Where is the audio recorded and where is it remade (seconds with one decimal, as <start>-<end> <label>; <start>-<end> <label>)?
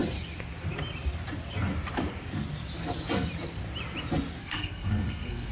0.0-4.4 recorded; 4.4-5.5 remade